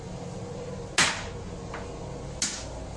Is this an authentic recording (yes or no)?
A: yes